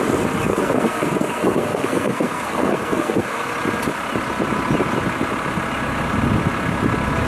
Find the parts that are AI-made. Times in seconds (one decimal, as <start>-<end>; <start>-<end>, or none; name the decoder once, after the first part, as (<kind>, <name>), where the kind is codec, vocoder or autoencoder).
0.5-3.5 (codec, SNAC)